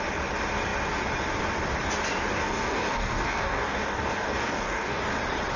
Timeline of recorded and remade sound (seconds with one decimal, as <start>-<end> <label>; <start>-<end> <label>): 0.0-2.3 recorded; 2.3-5.0 remade; 5.0-5.6 recorded